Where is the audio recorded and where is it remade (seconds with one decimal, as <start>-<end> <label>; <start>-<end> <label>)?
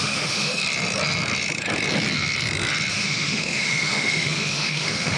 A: 0.0-0.6 remade; 0.6-2.9 recorded; 2.9-5.2 remade